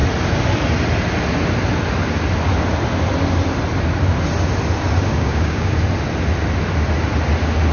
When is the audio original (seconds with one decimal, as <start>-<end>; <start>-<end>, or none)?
0.0-5.1; 5.7-7.7